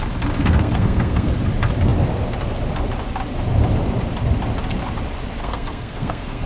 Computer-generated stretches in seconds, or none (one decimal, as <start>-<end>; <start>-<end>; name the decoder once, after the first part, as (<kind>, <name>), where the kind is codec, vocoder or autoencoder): 0.4-1.3 (codec, SNAC); 5.4-6.5